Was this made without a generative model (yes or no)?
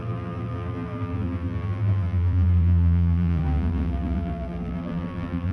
no